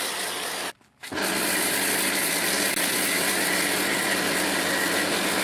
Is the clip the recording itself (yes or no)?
yes